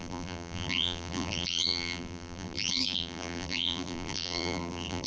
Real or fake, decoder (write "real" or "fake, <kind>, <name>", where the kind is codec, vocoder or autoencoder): fake, vocoder, BigVGAN v2